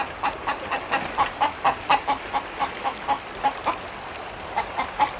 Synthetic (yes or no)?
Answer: no